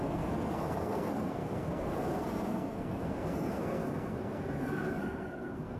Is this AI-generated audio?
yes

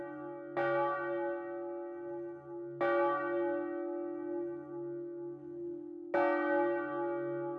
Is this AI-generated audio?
no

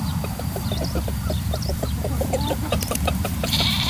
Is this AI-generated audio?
yes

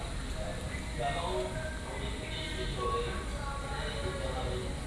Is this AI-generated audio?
no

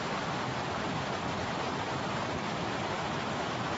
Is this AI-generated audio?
no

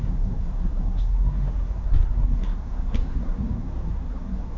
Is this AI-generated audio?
yes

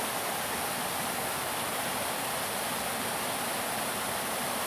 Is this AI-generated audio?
no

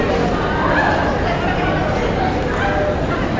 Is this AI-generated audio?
no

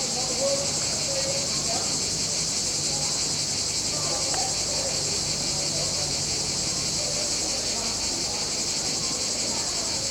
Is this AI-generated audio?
no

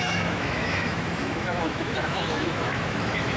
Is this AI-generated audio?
yes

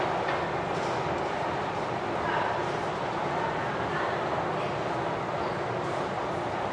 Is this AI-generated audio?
no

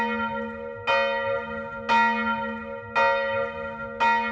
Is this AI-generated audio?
no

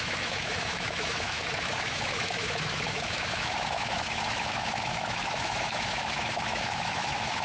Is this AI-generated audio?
yes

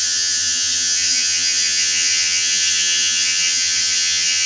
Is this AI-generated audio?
yes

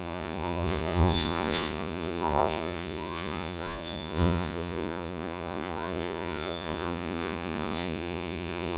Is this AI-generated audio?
yes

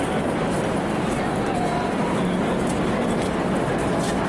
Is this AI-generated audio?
no